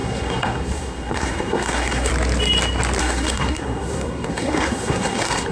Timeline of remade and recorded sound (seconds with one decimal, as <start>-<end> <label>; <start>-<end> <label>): 0.0-2.1 remade; 2.1-3.0 recorded; 3.0-5.5 remade